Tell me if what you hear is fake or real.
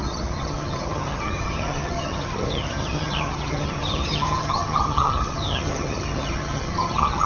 fake